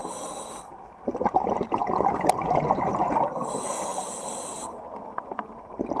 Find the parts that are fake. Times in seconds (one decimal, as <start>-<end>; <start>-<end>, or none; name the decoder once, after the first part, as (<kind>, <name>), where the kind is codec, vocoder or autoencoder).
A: none